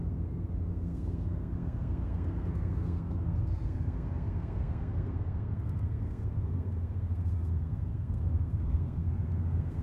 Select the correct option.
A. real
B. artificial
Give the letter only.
B